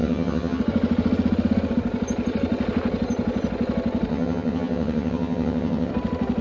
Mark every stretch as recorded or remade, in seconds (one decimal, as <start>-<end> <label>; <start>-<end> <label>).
0.0-0.6 remade; 0.6-4.1 recorded; 4.1-5.9 remade; 5.9-6.4 recorded